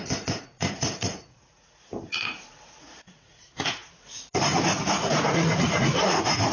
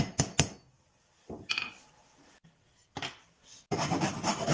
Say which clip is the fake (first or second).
first